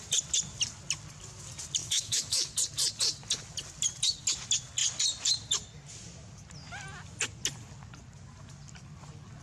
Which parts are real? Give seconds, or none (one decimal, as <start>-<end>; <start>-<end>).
0.0-1.8; 2.6-9.4